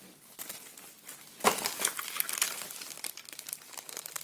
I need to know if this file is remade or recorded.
recorded